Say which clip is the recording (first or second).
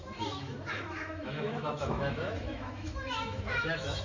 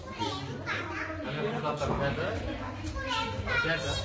second